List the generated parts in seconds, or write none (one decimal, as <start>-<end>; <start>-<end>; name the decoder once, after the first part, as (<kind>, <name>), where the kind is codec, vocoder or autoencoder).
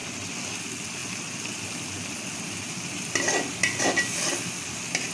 none